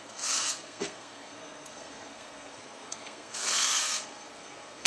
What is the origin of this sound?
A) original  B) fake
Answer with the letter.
B